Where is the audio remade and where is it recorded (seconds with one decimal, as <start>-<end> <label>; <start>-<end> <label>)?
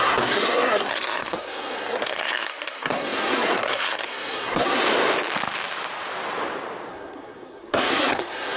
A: 0.0-4.8 remade; 4.8-6.9 recorded; 6.9-8.6 remade